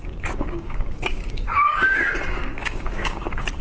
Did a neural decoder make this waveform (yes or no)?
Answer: yes